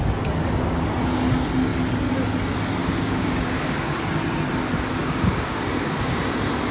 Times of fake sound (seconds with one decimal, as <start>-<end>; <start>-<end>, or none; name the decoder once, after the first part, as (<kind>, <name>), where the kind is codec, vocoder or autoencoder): 2.8-4.0 (codec, DAC); 5.0-6.2

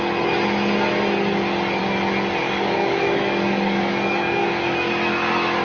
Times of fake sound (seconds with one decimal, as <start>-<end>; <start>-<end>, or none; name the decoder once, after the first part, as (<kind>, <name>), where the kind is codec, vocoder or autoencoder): 2.4-4.9 (codec, DAC)